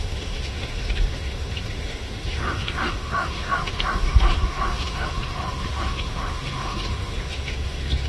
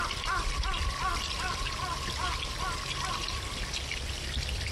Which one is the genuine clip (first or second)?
second